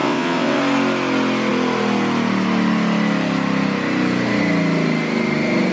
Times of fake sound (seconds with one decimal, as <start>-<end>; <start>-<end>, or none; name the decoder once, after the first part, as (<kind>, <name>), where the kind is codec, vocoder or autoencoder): 0.0-0.6 (vocoder, WaveNeXt)